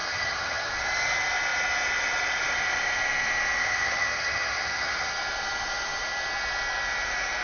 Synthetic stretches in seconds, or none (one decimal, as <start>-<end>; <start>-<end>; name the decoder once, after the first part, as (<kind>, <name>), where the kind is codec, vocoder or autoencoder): 0.0-0.7 (vocoder, HiFi-GAN); 3.6-5.1